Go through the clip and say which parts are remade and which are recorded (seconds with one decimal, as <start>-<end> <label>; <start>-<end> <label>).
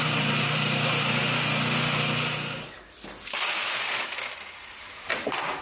0.0-1.2 remade; 1.2-4.6 recorded; 4.6-5.6 remade